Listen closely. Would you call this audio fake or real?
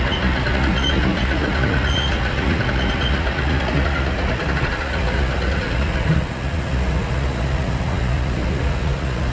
fake